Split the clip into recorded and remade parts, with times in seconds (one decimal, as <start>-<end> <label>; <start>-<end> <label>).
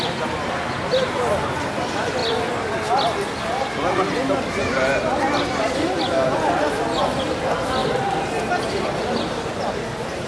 0.0-10.3 recorded